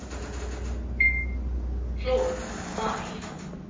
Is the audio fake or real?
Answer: real